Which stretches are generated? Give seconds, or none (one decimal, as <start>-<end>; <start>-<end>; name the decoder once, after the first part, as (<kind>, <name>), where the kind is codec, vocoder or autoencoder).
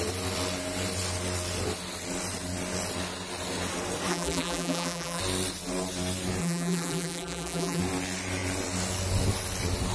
4.1-5.2 (vocoder, BigVGAN v2); 6.4-7.8